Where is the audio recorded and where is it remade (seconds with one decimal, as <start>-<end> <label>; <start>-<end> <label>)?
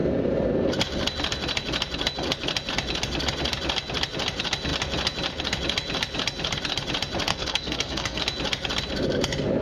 0.0-7.3 recorded; 7.3-8.2 remade; 8.2-9.6 recorded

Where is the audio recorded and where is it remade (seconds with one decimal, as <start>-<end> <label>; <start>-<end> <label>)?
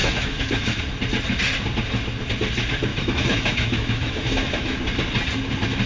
0.0-0.8 remade; 0.8-2.9 recorded; 2.9-4.8 remade; 4.8-5.9 recorded